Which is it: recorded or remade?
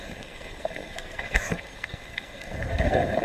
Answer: remade